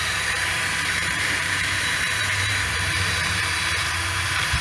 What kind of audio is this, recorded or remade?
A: remade